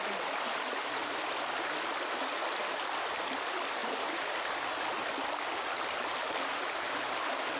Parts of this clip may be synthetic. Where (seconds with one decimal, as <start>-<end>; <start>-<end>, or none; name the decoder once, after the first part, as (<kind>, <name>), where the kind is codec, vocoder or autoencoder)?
none